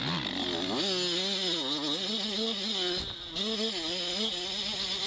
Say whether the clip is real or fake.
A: real